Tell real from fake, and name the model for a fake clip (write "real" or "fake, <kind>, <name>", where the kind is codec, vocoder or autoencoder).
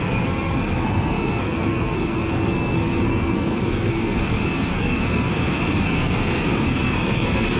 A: fake, codec, SNAC